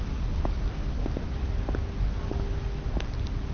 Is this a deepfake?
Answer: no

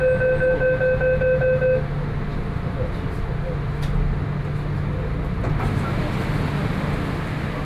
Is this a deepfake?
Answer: no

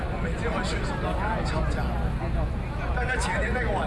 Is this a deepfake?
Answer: no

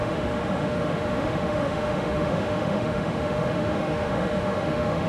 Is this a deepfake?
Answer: yes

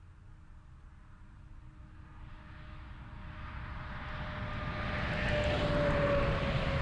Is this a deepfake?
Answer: no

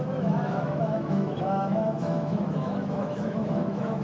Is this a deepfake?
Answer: yes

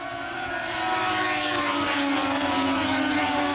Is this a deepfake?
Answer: no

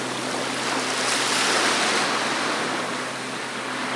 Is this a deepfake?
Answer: no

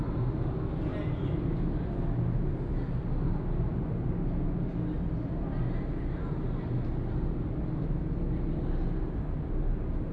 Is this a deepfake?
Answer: no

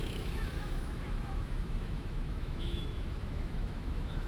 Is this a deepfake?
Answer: yes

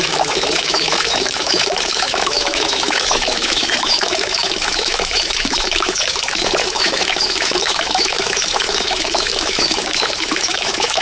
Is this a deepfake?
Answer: yes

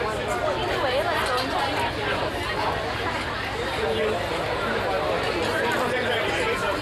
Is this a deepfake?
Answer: no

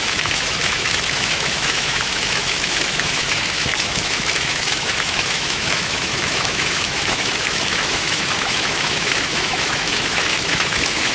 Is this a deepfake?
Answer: yes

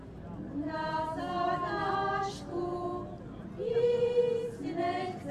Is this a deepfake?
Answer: no